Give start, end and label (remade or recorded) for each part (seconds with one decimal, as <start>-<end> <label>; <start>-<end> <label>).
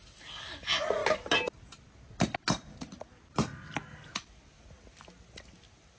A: 0.0-6.0 recorded